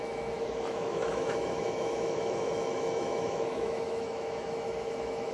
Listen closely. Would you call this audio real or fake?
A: fake